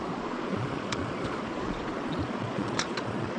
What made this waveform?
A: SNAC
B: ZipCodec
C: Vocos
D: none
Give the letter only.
C